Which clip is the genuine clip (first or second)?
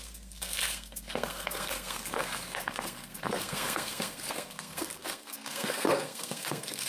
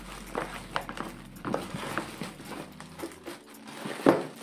second